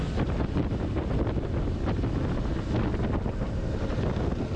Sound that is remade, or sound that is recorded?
recorded